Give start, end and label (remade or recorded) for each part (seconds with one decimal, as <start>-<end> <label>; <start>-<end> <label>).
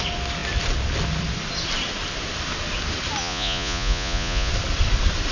0.0-3.2 recorded; 3.2-4.5 remade; 4.5-5.3 recorded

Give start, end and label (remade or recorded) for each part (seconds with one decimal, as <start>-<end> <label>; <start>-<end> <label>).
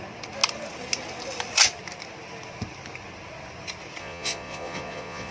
0.0-4.0 recorded; 4.0-5.3 remade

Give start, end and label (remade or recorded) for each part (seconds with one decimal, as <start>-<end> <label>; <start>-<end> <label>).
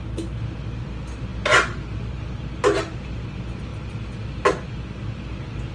0.0-5.7 recorded